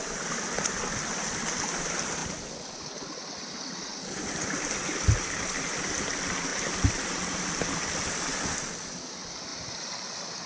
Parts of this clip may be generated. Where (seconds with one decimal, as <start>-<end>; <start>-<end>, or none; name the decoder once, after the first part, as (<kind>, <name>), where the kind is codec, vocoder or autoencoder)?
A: 2.2-3.4 (vocoder, BigVGAN v2)